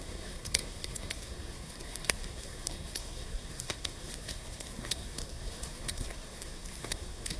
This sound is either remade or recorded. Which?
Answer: remade